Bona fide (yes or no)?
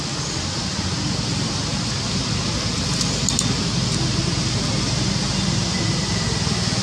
yes